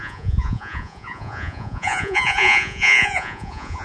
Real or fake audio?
fake